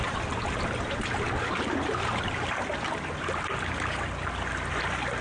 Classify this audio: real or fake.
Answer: real